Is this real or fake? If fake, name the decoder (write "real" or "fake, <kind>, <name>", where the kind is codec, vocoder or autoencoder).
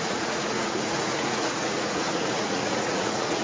fake, vocoder, Vocos